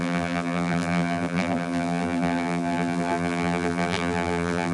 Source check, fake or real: fake